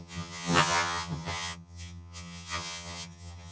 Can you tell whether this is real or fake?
fake